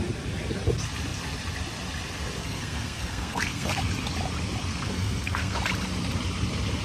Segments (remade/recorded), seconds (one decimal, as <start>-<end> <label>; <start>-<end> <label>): 0.0-2.4 recorded; 2.4-3.8 remade; 3.8-4.7 recorded; 4.7-5.6 remade; 5.6-6.8 recorded